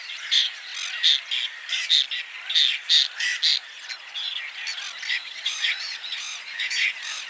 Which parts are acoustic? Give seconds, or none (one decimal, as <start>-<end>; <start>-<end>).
0.7-5.1